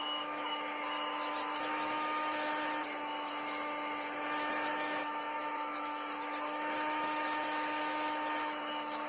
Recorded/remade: remade